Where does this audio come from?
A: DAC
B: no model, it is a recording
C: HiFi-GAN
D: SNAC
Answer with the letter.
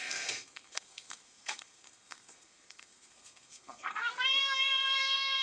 D